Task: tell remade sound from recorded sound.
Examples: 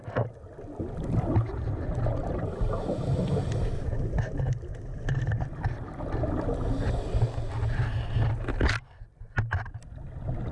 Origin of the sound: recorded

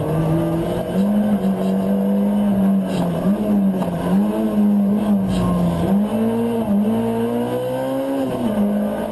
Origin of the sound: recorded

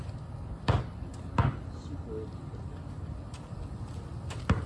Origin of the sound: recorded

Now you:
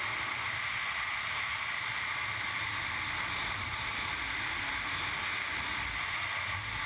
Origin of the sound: recorded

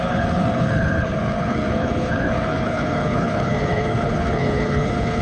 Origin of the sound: remade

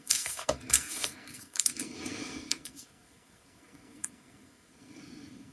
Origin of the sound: remade